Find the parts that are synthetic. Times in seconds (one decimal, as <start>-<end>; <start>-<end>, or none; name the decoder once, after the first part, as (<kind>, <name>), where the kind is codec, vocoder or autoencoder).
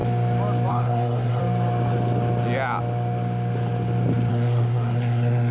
0.7-1.4 (codec, SNAC); 4.3-5.5